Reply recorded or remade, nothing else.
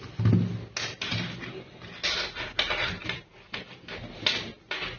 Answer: recorded